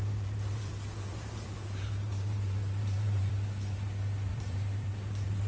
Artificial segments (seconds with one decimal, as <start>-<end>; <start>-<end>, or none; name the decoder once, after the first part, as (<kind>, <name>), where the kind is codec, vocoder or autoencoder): 0.0-3.3 (vocoder, BigVGAN v2); 4.3-5.5